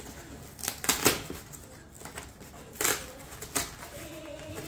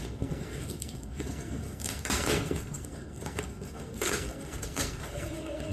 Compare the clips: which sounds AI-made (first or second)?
second